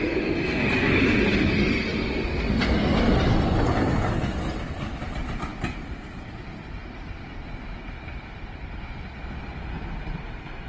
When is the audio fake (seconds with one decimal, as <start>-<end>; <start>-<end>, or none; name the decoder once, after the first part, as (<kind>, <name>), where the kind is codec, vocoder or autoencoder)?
none

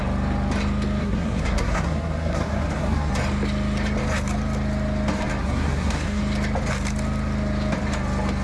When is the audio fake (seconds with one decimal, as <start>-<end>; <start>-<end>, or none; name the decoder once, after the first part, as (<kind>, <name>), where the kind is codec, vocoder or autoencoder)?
1.0-3.1 (codec, SNAC); 5.4-6.2